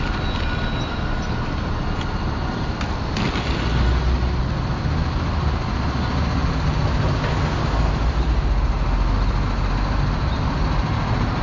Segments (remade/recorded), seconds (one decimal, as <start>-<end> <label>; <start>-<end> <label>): 0.0-11.4 recorded